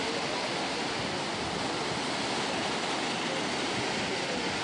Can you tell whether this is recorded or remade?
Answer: recorded